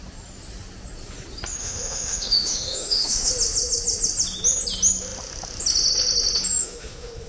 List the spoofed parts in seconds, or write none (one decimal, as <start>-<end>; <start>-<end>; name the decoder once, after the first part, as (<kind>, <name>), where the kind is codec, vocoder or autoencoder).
1.6-3.3 (autoencoder, DAC-VAE); 6.6-7.3